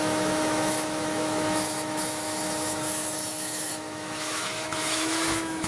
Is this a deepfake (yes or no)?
yes